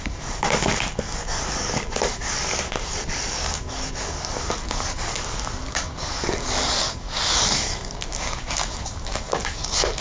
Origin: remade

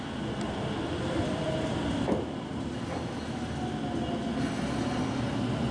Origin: recorded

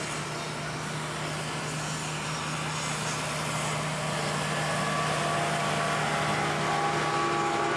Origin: recorded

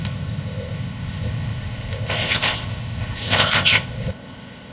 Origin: remade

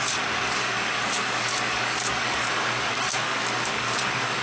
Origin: remade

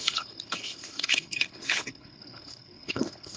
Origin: remade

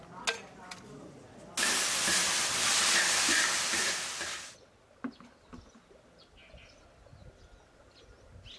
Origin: recorded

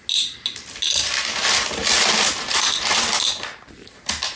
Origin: recorded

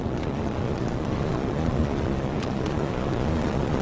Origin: remade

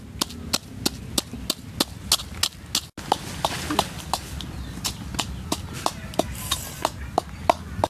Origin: recorded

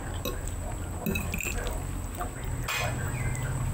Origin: recorded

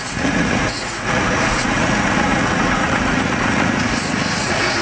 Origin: remade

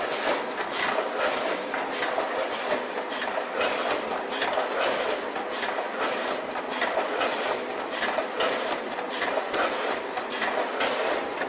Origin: recorded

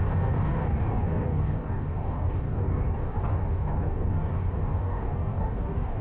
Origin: remade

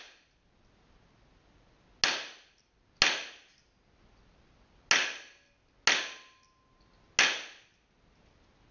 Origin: recorded